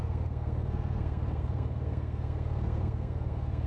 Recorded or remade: remade